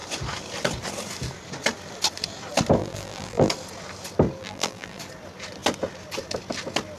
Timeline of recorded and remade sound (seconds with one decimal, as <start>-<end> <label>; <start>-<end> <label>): 0.0-2.8 recorded; 2.8-3.5 remade; 3.5-4.4 recorded; 4.4-5.0 remade; 5.0-7.0 recorded